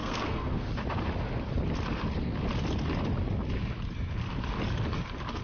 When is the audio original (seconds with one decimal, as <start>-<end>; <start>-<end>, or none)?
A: 0.7-5.4